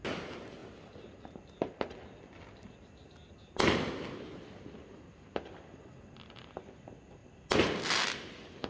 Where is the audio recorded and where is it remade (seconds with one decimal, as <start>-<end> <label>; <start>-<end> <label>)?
0.0-8.7 recorded